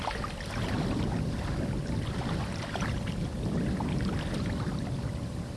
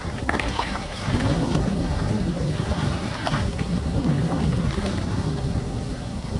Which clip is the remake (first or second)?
second